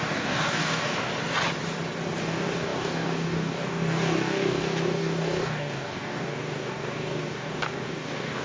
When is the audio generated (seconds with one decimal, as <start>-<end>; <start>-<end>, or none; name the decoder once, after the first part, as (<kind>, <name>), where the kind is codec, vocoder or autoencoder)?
0.0-1.1 (codec, DAC); 2.2-8.4